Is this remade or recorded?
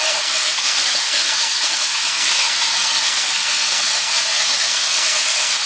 remade